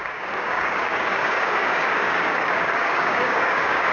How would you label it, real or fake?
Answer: fake